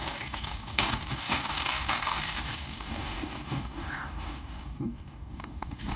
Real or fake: fake